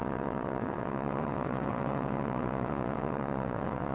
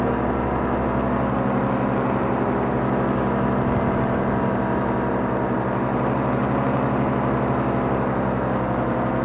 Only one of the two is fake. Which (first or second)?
first